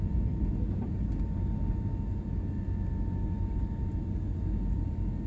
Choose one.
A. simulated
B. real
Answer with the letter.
B